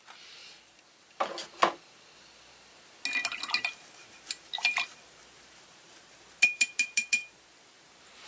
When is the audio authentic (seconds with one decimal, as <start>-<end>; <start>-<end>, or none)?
0.4-3.7